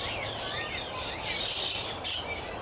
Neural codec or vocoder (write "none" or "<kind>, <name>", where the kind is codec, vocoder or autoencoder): none